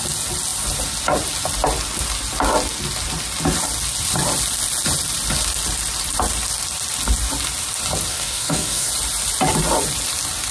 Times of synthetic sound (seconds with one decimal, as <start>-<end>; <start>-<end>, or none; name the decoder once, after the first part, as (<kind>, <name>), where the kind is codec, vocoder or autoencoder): 8.1-8.9 (codec, DAC)